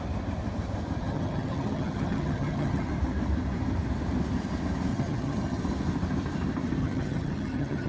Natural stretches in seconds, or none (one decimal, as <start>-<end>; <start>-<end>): 0.0-1.0; 2.9-4.9; 5.6-6.8